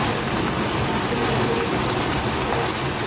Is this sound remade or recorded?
recorded